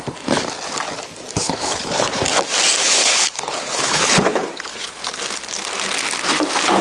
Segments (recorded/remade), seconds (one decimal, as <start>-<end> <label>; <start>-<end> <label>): 0.0-1.4 recorded; 1.4-2.2 remade; 2.2-2.8 recorded; 2.8-5.0 remade; 5.0-6.8 recorded

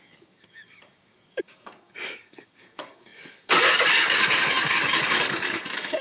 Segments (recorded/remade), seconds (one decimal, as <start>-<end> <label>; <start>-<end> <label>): 0.0-6.0 remade

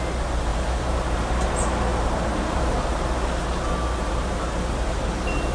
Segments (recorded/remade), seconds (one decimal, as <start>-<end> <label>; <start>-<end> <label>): 0.0-0.5 recorded; 0.5-1.3 remade; 1.3-1.9 recorded; 1.9-3.0 remade; 3.0-4.0 recorded; 4.0-5.0 remade; 5.0-5.5 recorded

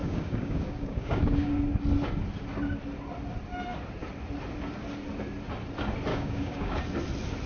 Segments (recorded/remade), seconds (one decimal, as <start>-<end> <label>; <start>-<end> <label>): 0.0-1.6 remade; 1.6-6.1 recorded; 6.1-6.8 remade; 6.8-7.5 recorded

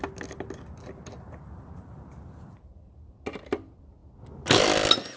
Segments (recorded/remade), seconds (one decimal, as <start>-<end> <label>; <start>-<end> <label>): 0.0-5.2 recorded

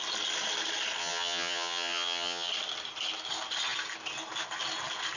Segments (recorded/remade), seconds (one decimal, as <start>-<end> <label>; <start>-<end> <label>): 0.0-1.0 recorded; 1.0-2.5 remade; 2.5-5.2 recorded

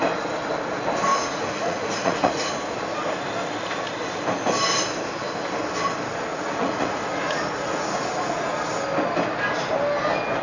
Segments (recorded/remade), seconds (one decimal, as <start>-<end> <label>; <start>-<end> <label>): 0.0-1.1 recorded; 1.1-2.5 remade; 2.5-6.3 recorded; 6.3-8.5 remade; 8.5-10.4 recorded